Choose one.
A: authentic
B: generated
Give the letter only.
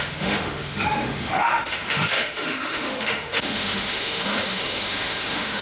B